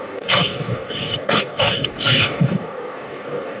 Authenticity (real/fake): fake